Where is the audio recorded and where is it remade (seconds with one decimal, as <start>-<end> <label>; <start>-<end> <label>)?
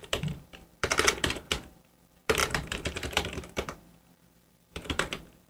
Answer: 0.0-5.5 remade